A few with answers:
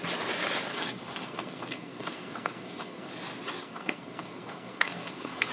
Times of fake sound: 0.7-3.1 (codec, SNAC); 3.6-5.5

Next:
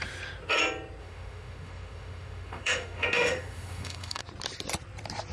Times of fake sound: 1.0-4.2 (autoencoder, DAC-VAE)

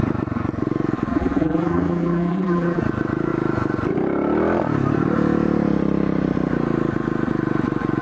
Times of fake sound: 1.1-2.8 (vocoder, BigVGAN v2)